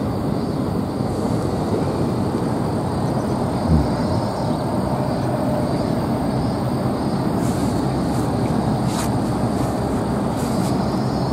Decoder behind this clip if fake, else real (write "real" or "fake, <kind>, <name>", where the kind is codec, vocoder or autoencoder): real